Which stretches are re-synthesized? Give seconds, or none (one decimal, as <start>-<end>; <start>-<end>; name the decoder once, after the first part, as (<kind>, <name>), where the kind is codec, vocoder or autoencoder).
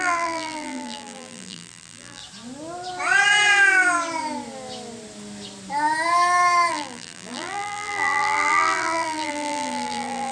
0.0-2.2 (vocoder, BigVGAN v2); 6.7-10.3